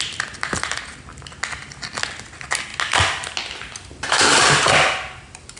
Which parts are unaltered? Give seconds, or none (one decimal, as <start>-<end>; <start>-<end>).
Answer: 0.0-5.6